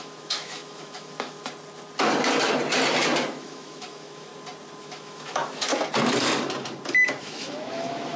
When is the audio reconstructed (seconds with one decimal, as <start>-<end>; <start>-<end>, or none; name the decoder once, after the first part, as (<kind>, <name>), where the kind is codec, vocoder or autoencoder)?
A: 0.0-1.4 (autoencoder, DAC-VAE); 3.3-4.3; 4.8-5.7; 7.2-8.2